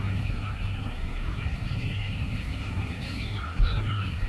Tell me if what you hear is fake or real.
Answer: fake